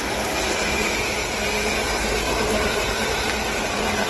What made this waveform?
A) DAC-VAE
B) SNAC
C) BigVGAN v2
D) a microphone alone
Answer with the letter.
C